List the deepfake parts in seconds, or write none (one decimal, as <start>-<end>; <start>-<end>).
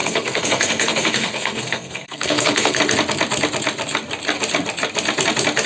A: 0.0-2.8